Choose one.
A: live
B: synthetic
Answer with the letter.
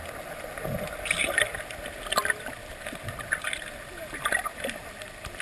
A